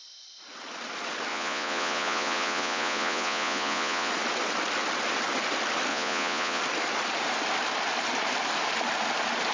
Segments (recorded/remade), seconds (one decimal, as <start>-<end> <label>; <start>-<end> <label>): 0.0-1.3 recorded; 1.3-4.1 remade; 4.1-5.9 recorded; 5.9-6.6 remade; 6.6-9.5 recorded